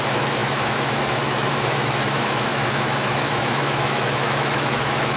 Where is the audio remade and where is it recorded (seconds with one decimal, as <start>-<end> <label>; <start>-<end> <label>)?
0.0-5.2 remade